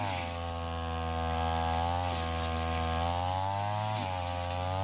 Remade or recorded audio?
recorded